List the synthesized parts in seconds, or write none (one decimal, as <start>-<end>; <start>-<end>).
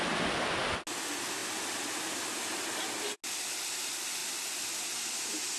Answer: 4.2-5.6